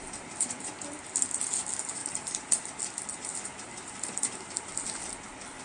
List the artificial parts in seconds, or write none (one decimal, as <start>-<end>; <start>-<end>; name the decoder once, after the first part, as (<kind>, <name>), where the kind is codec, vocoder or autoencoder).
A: 2.0-2.6 (vocoder, BigVGAN v2)